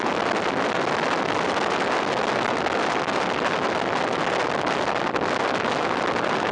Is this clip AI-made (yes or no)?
no